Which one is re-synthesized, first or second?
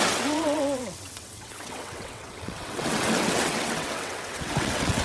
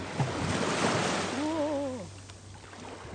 first